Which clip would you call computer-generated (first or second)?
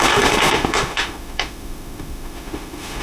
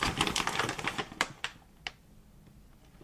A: first